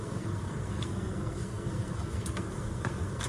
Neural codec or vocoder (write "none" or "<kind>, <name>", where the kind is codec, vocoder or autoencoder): codec, SNAC